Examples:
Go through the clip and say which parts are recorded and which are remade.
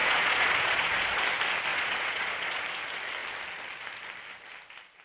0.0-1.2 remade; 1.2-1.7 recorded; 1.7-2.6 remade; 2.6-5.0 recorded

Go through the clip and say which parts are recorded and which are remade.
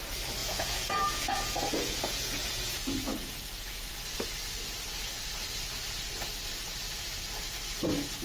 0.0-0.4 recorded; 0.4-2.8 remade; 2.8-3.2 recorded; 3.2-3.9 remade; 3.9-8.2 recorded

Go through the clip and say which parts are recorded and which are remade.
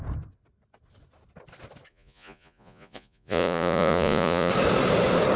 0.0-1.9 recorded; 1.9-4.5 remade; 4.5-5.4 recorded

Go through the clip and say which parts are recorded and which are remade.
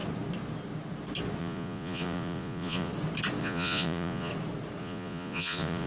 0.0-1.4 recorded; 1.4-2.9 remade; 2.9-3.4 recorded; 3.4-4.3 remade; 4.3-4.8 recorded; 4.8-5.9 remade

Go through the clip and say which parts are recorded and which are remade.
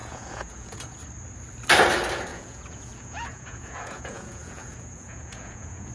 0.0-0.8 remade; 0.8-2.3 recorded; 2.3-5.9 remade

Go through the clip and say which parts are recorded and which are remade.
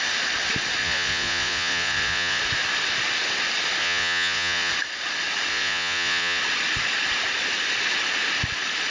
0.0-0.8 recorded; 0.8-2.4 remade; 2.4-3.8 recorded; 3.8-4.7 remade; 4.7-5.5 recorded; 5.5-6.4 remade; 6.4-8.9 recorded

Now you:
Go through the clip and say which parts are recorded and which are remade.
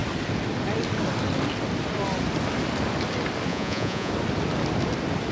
0.0-3.5 recorded; 3.5-4.1 remade; 4.1-5.3 recorded